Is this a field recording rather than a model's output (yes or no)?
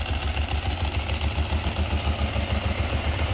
yes